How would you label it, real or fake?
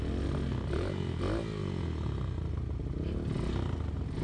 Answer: real